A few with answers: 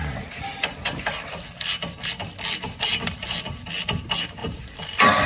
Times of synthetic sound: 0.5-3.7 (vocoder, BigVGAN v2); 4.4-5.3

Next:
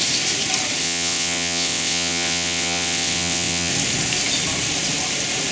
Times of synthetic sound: 0.8-3.7 (vocoder, WaveNeXt)

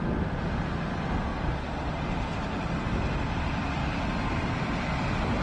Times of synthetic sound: none

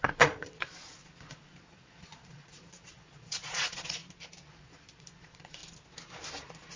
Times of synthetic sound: 0.0-4.0 (vocoder, Vocos); 4.5-5.6